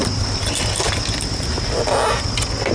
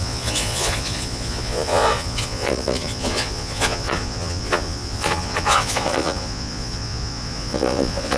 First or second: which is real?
first